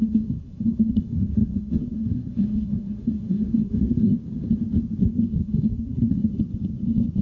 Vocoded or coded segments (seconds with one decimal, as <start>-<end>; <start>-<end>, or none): 0.0-4.1; 5.0-6.3